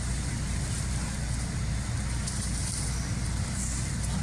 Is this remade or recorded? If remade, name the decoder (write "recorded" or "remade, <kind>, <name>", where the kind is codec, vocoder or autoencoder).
recorded